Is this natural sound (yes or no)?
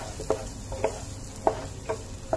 yes